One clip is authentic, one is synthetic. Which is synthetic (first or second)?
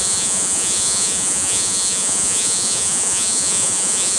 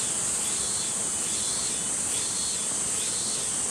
first